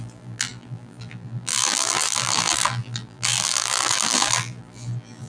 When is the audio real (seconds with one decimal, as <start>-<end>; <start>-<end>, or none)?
none